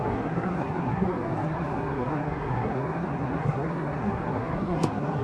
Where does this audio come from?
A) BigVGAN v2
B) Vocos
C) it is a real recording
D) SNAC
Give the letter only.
D